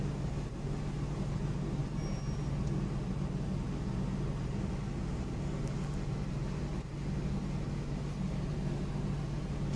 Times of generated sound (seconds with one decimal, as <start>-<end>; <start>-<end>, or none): none